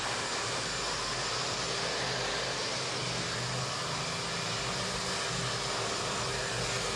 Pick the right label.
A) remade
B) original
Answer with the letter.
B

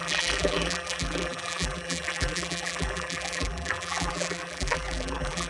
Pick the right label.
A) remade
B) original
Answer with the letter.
A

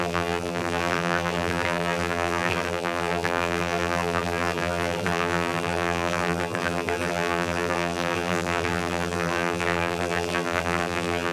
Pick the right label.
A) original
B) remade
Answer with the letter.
B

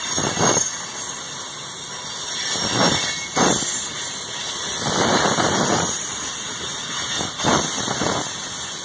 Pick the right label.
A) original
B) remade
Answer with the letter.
A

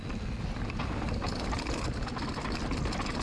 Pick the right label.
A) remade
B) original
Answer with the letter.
B